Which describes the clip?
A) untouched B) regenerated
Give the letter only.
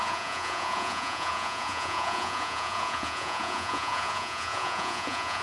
B